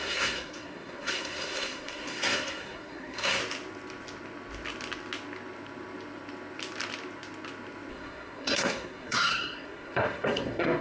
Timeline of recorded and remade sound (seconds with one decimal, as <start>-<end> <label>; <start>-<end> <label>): 0.0-3.4 remade; 3.4-7.9 recorded; 7.9-10.8 remade